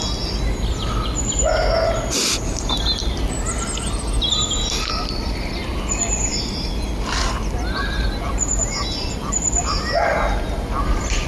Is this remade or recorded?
recorded